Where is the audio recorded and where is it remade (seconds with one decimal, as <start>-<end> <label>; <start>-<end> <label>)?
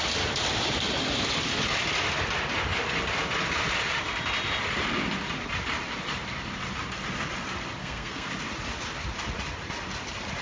0.0-7.8 recorded; 7.8-8.3 remade; 8.3-10.4 recorded